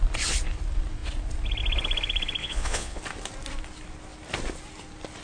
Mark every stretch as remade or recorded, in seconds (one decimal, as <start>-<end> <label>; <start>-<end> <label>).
0.0-2.4 recorded; 2.4-3.0 remade; 3.0-5.2 recorded